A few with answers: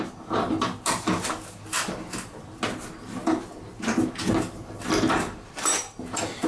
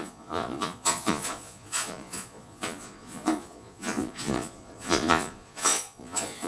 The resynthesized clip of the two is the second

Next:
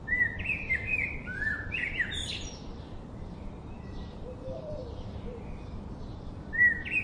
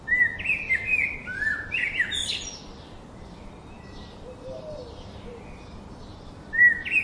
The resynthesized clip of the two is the first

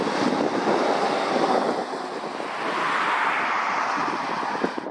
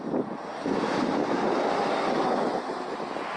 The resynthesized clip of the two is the first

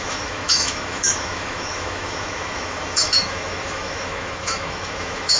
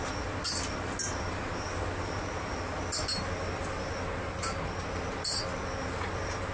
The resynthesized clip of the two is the first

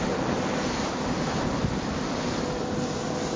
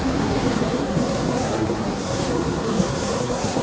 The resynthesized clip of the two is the second